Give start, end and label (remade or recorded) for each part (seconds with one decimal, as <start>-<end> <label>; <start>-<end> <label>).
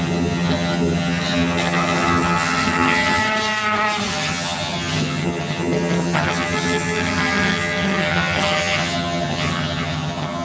0.0-3.2 remade; 3.2-4.1 recorded; 4.1-10.4 remade